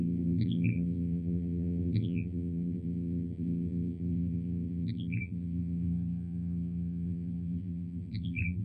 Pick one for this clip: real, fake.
fake